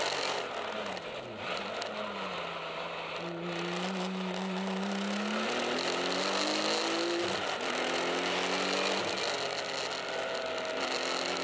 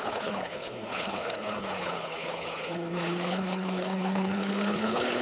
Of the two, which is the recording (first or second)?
first